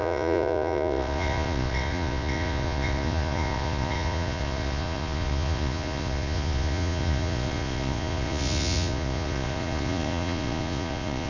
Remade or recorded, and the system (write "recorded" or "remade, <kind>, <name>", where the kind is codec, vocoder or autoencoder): remade, vocoder, Vocos